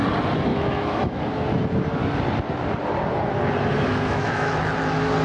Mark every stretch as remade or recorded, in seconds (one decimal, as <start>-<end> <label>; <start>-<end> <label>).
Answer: 0.0-0.5 recorded; 0.5-1.2 remade; 1.2-3.9 recorded; 3.9-4.5 remade; 4.5-5.2 recorded